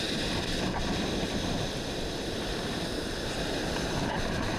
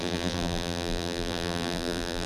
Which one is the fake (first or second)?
second